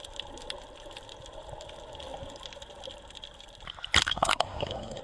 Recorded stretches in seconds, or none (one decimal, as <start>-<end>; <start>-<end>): 0.0-4.0